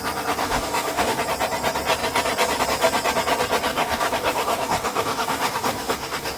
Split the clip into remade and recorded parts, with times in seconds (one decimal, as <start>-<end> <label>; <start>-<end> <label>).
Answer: 0.0-0.4 recorded; 0.4-1.2 remade; 1.2-3.7 recorded; 3.7-6.4 remade